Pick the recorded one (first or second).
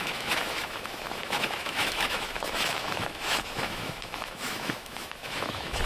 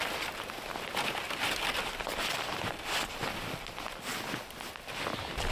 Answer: second